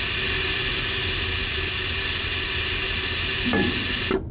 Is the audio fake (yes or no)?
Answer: no